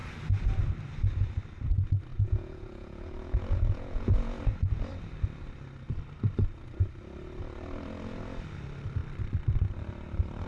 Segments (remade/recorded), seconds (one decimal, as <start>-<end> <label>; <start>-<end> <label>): 0.0-2.1 recorded; 2.1-4.4 remade; 4.4-10.5 recorded